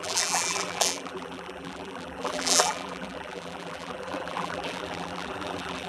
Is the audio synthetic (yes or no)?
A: yes